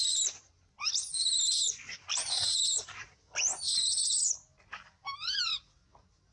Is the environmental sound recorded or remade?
remade